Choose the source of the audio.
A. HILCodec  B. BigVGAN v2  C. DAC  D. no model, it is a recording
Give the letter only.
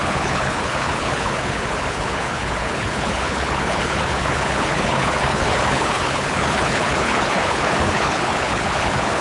A